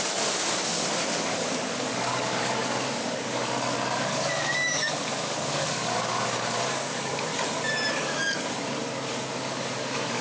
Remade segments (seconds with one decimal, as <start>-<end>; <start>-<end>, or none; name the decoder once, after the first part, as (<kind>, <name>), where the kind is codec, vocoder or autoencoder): 0.0-7.3 (codec, DAC); 7.9-10.2